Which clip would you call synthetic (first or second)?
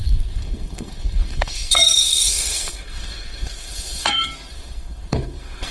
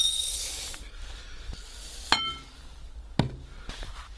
first